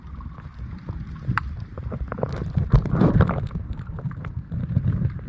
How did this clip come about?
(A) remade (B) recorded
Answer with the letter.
A